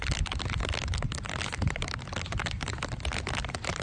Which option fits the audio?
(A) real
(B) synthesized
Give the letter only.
A